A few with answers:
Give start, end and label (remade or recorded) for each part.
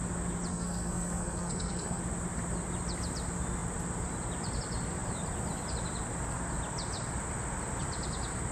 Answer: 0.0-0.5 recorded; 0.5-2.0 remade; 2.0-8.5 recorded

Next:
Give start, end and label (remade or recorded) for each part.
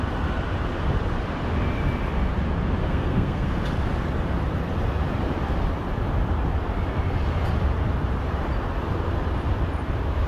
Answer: 0.0-2.8 recorded; 2.8-3.6 remade; 3.6-10.3 recorded